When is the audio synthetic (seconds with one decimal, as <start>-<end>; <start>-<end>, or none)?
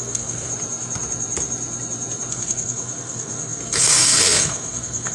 0.0-0.5; 2.3-5.1